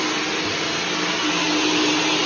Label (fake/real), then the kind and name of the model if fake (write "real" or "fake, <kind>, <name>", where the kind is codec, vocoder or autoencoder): real